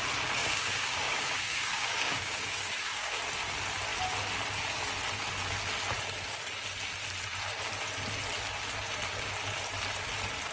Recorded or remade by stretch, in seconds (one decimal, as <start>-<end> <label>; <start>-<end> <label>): 0.0-0.4 recorded; 0.4-3.2 remade; 3.2-10.5 recorded